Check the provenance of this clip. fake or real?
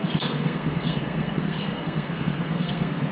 fake